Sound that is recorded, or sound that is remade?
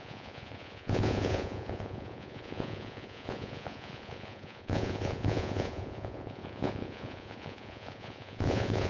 remade